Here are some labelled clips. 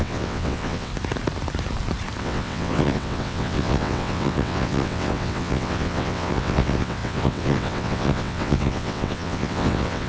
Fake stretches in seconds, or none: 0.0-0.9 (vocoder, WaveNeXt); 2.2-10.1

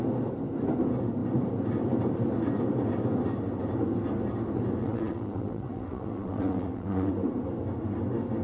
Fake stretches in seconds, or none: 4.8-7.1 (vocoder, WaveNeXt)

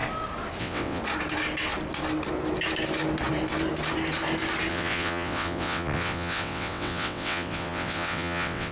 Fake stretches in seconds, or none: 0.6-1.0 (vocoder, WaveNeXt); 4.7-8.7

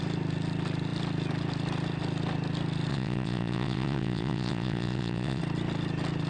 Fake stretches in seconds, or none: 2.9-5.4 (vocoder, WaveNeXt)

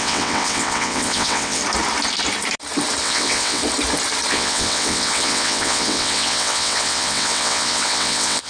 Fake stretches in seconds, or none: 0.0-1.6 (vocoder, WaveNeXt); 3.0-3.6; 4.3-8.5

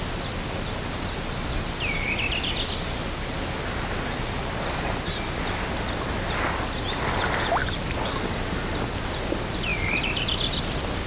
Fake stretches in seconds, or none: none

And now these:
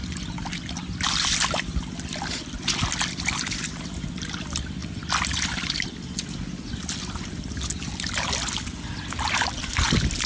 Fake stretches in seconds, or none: none

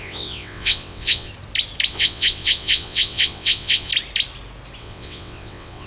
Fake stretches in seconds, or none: 0.0-1.3 (vocoder, WaveNeXt); 1.9-3.9; 4.8-5.9